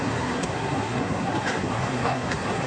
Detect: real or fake fake